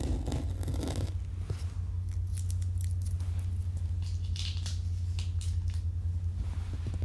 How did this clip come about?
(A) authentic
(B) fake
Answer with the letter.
A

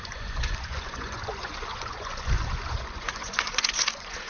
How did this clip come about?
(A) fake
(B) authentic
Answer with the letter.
A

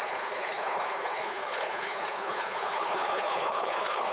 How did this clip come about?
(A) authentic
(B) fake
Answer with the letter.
B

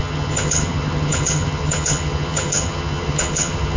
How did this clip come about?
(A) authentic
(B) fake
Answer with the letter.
B